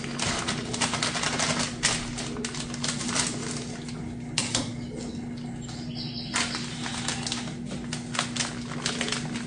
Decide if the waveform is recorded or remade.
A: recorded